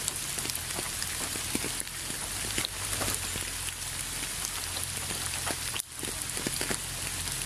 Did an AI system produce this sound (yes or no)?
no